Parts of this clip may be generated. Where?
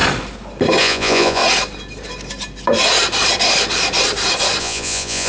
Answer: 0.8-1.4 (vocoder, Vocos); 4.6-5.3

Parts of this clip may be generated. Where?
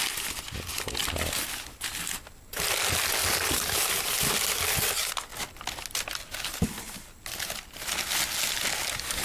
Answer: none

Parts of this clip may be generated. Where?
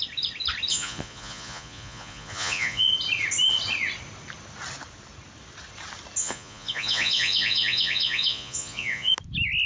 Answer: 0.7-2.9 (vocoder, Vocos); 6.2-9.1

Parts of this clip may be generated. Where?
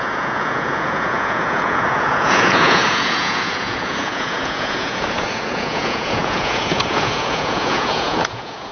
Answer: 0.0-8.7 (vocoder, Vocos)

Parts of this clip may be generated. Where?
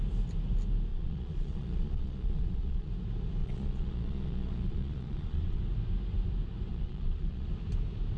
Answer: 0.9-2.9 (vocoder, Vocos); 3.4-5.6; 6.7-7.5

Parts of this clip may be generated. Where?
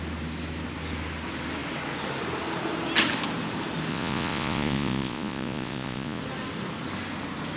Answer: 3.9-6.2 (vocoder, Vocos)